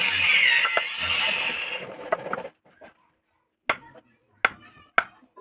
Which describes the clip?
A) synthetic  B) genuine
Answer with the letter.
B